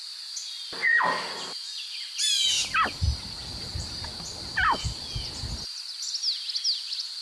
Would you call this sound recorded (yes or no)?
yes